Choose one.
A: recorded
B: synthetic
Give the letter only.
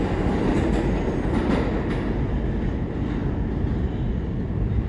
A